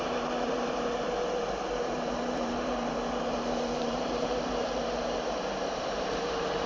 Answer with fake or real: fake